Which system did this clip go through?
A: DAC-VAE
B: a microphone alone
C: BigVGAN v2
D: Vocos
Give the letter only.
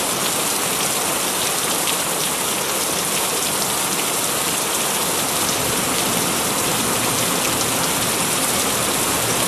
C